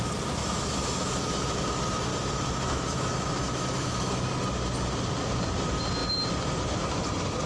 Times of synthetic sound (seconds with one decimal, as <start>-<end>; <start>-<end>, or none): 0.4-1.6; 2.1-4.2